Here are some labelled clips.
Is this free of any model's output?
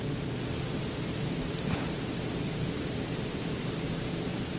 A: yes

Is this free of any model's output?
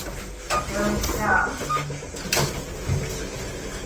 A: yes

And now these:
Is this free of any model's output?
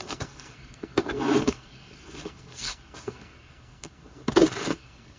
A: no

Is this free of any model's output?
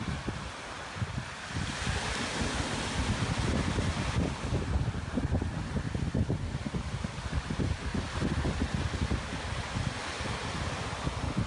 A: yes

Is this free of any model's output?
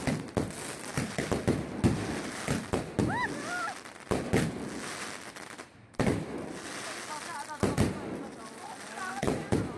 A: yes